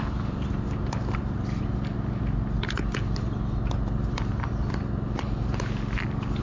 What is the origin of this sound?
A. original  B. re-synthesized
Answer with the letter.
A